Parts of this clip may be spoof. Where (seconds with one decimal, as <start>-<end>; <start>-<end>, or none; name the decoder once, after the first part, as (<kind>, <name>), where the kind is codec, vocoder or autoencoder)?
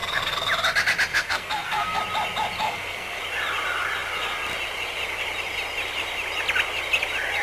0.0-0.5 (codec, SNAC); 1.1-2.0; 2.6-3.2